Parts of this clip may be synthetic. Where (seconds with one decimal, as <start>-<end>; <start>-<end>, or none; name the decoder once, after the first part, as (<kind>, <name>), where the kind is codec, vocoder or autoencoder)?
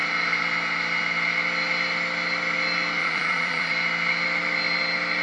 3.0-3.7 (vocoder, Vocos)